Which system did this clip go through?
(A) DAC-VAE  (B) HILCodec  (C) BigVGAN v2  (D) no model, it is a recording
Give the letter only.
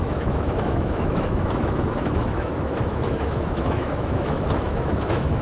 A